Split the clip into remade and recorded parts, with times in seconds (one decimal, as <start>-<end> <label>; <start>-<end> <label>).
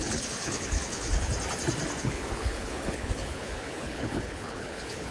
0.0-1.3 remade; 1.3-2.0 recorded; 2.0-5.1 remade